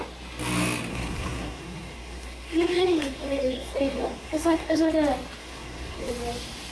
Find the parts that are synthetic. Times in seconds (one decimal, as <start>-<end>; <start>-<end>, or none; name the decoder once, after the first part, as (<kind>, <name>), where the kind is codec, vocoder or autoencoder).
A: 0.9-4.9 (codec, SNAC); 5.4-6.1